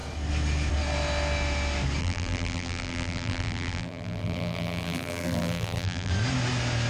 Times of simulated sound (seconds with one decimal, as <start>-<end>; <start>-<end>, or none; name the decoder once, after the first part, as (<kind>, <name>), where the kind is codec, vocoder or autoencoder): 2.0-6.1 (vocoder, BigVGAN v2)